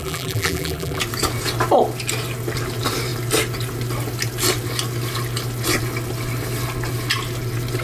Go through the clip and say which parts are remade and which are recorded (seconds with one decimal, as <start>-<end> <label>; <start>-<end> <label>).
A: 0.0-1.0 remade; 1.0-7.8 recorded